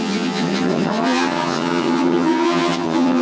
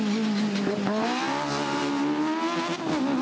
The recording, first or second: second